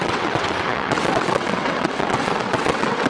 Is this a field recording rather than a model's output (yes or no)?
no